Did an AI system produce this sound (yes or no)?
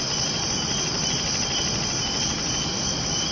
no